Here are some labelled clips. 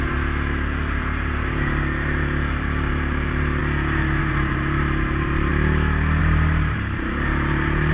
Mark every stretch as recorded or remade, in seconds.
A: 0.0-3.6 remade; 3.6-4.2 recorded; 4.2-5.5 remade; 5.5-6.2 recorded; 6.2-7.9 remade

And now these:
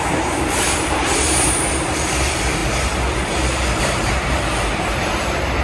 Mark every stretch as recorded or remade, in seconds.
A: 0.0-2.6 remade; 2.6-3.8 recorded; 3.8-5.6 remade

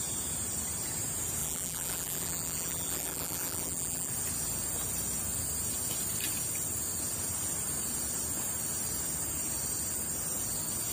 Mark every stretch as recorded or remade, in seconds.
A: 0.0-1.4 recorded; 1.4-4.1 remade; 4.1-10.9 recorded

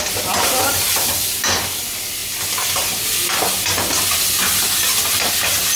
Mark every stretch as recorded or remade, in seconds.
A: 0.0-5.8 recorded

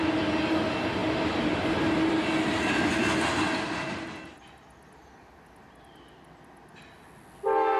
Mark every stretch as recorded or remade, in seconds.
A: 0.0-7.8 recorded

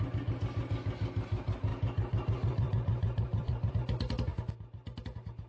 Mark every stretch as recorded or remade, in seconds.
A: 0.0-1.7 recorded; 1.7-3.7 remade; 3.7-5.5 recorded

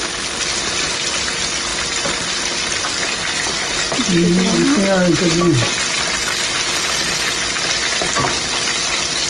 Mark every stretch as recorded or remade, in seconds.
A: 0.0-9.3 recorded

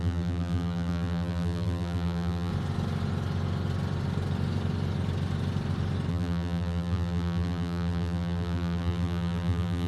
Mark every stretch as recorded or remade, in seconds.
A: 0.0-2.5 remade; 2.5-6.1 recorded; 6.1-9.9 remade